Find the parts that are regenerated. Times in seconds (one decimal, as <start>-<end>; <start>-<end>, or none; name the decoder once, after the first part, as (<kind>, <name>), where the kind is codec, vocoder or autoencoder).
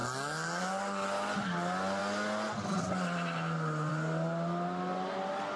none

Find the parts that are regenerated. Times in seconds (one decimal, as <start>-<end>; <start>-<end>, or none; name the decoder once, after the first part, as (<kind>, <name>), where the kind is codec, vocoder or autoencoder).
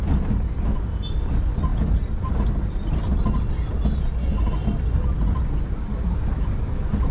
1.7-3.5 (vocoder, BigVGAN v2)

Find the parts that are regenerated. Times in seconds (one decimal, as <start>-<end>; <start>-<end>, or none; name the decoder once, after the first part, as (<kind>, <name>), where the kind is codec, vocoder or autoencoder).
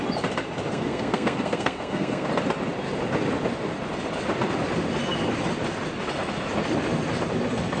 0.7-2.3 (codec, SNAC)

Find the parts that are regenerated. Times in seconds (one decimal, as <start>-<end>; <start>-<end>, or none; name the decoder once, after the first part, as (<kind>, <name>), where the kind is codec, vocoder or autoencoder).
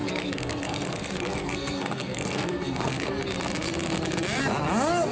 0.0-3.1 (codec, SNAC)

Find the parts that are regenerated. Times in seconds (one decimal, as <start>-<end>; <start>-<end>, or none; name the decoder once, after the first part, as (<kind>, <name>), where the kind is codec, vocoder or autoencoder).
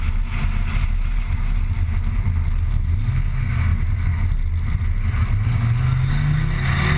none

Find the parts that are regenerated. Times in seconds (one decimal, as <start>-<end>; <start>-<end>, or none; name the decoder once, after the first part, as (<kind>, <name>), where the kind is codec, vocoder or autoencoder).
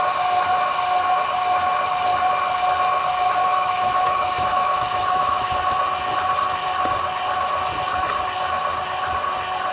3.4-5.5 (autoencoder, DAC-VAE)